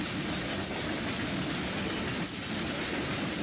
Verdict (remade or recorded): recorded